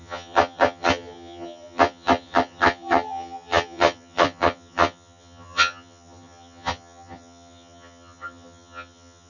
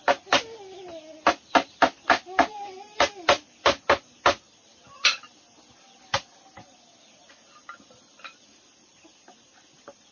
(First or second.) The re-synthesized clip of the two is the first